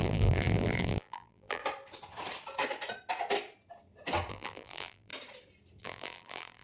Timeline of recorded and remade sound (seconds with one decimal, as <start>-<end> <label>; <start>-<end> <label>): 0.0-1.6 remade; 1.6-4.3 recorded; 4.3-5.1 remade; 5.1-5.8 recorded; 5.8-6.6 remade